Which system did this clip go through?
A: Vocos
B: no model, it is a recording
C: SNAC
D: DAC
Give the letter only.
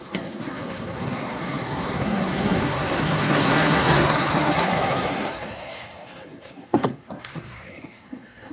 C